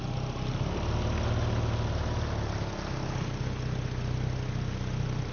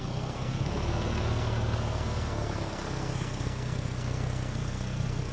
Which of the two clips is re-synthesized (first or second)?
second